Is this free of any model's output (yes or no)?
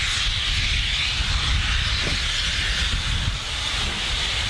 yes